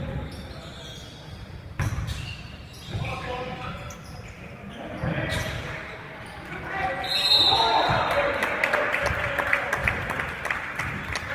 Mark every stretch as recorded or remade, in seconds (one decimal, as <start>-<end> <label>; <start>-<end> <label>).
0.0-11.3 recorded